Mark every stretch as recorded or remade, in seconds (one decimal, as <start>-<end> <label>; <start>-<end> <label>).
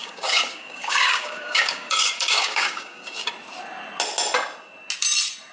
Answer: 0.0-3.3 remade; 3.3-5.5 recorded